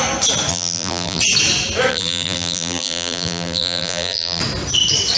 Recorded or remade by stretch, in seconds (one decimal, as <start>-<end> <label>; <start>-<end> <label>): 0.0-0.5 recorded; 0.5-1.2 remade; 1.2-1.9 recorded; 1.9-4.4 remade; 4.4-5.2 recorded